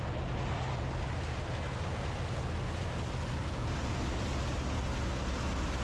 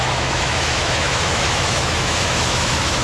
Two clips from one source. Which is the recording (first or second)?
first